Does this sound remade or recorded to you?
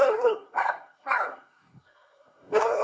remade